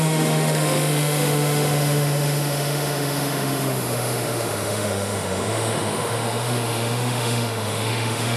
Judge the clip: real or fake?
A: fake